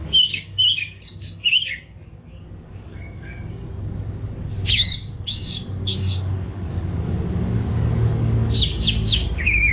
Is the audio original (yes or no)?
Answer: no